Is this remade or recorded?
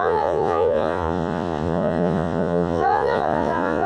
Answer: remade